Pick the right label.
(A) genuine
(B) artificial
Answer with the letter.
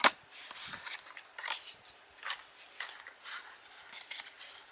A